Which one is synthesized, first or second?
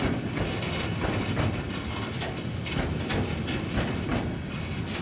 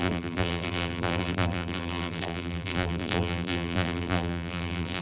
second